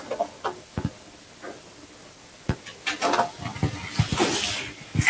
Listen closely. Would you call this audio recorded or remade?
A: recorded